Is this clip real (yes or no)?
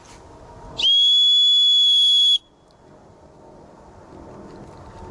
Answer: yes